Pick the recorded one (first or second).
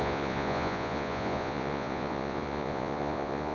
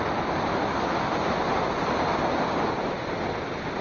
second